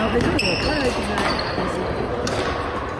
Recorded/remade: recorded